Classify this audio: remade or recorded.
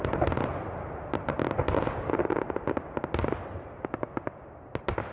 recorded